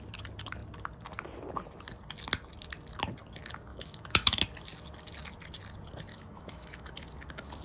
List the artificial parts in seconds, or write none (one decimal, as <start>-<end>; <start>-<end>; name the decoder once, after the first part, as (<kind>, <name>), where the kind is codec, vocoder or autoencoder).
3.7-4.4 (autoencoder, DAC-VAE); 6.1-6.9